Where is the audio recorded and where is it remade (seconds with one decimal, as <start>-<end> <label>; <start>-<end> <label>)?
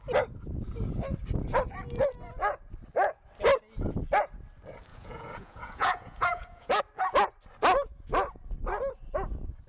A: 0.0-4.9 recorded; 4.9-6.8 remade; 6.8-9.7 recorded